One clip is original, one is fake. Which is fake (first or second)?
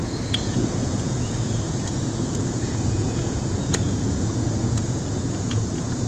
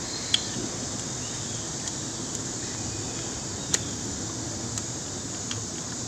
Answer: first